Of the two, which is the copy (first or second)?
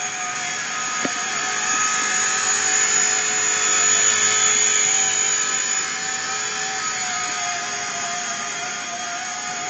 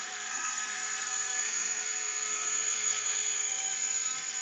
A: second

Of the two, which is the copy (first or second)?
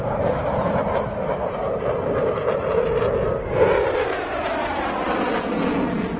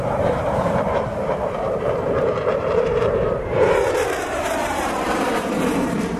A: second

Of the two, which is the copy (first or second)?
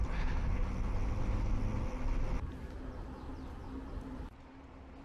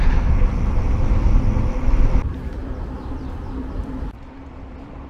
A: second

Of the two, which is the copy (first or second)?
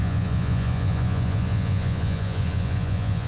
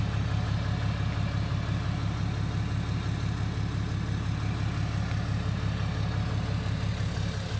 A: first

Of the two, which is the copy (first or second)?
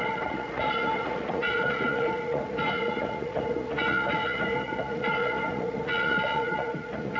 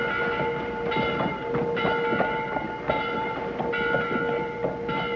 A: first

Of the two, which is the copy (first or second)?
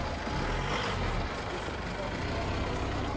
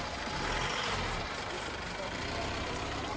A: second